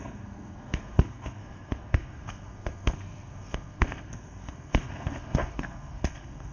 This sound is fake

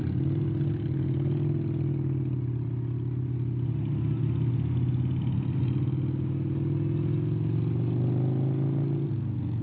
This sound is real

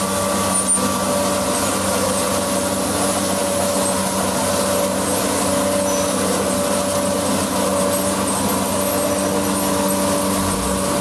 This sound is real